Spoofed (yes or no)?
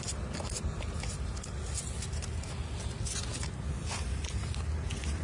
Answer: no